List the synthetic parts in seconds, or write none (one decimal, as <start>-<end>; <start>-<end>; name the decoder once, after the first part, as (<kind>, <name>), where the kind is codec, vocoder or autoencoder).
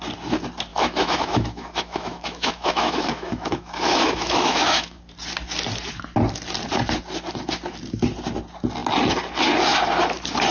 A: 0.7-5.0 (autoencoder, DAC-VAE)